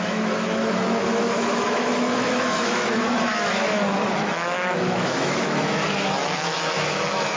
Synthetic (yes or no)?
yes